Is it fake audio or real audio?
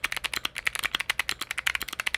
real